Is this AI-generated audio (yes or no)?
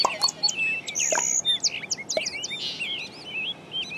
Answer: no